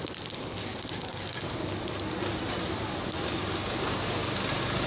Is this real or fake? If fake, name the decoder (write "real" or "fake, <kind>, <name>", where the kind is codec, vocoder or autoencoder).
real